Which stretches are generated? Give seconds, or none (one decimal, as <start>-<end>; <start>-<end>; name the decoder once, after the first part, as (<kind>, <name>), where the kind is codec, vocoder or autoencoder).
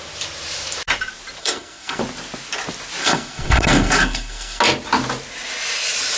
1.4-2.0 (codec, SNAC); 3.0-4.6